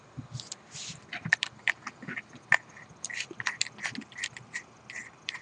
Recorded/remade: recorded